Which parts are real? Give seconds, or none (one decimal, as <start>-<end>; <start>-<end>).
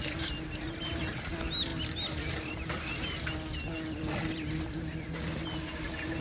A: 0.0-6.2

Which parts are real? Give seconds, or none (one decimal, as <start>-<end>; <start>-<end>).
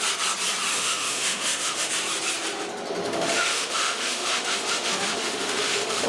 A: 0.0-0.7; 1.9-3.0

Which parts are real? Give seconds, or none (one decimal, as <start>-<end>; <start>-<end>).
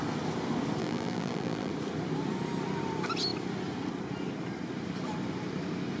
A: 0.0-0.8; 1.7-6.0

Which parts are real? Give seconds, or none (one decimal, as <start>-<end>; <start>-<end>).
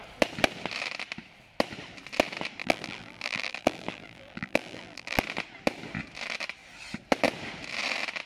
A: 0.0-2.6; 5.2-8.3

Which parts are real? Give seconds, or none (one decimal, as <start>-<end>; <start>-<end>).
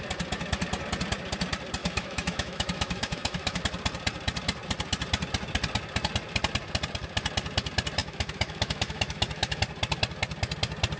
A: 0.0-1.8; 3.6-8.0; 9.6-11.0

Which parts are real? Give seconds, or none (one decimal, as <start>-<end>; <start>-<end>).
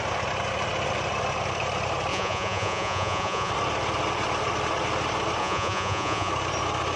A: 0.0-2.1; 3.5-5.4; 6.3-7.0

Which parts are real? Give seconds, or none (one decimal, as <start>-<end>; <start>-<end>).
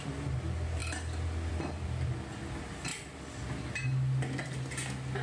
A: 0.0-5.2